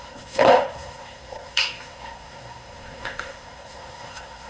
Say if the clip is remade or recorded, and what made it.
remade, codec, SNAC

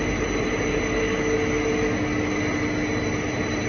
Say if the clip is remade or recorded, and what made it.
recorded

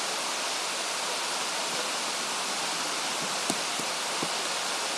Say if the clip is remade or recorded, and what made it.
recorded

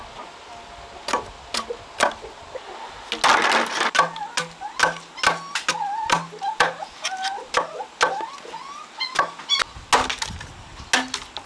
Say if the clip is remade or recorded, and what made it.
recorded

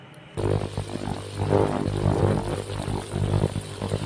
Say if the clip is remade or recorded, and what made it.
recorded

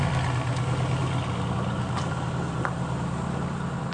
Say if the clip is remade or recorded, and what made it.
recorded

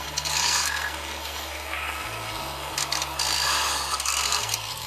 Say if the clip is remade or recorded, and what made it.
remade, codec, SNAC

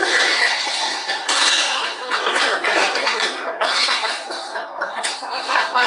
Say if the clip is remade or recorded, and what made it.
remade, codec, SNAC